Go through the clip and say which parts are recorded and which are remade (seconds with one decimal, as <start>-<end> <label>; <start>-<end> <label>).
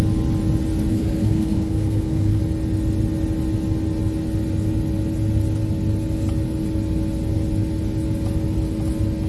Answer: 0.0-0.9 recorded; 0.9-2.4 remade; 2.4-9.3 recorded